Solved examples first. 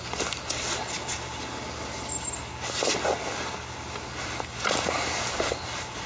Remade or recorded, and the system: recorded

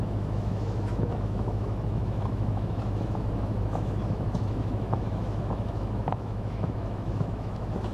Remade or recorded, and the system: remade, autoencoder, DAC-VAE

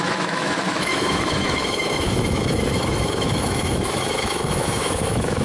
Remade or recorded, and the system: remade, autoencoder, DAC-VAE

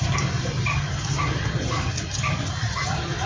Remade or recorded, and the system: recorded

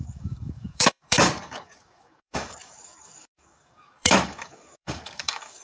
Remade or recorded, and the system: remade, codec, DAC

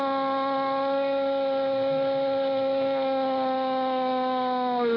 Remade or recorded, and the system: recorded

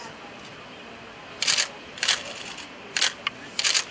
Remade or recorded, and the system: recorded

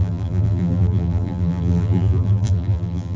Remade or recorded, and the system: remade, vocoder, BigVGAN v2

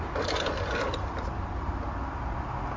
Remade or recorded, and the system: recorded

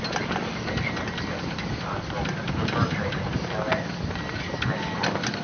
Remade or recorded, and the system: recorded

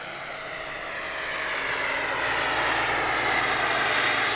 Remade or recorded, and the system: recorded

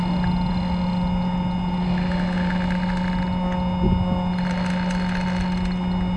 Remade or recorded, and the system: recorded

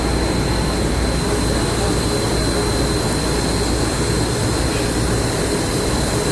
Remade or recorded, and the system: recorded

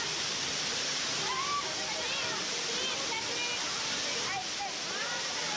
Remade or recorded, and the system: recorded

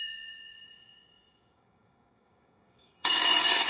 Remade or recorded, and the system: remade, codec, DAC